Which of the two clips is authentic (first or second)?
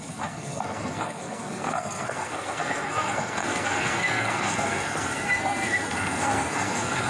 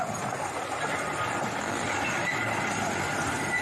second